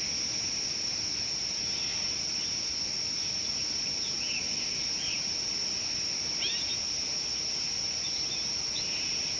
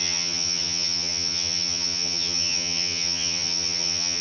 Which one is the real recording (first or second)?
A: first